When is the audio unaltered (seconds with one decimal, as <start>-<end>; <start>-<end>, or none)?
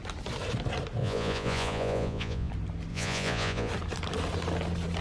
0.0-1.0; 2.5-2.9; 3.7-5.0